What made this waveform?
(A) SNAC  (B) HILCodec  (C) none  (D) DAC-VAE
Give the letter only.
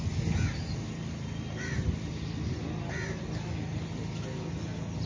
C